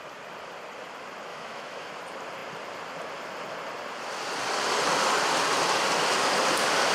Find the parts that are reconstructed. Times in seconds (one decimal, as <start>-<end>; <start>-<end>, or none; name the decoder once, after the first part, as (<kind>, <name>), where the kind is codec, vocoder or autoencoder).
1.3-1.9 (autoencoder, DAC-VAE)